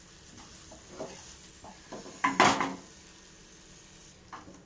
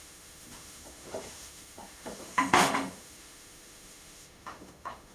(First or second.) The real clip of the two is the first